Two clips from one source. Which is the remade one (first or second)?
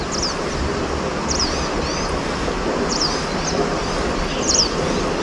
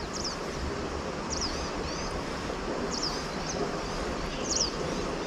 second